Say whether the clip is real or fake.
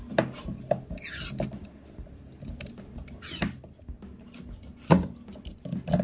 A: real